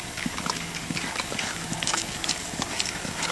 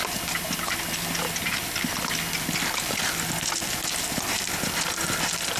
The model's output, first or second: first